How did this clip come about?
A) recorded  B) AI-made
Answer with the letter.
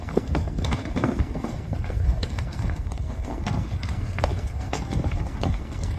B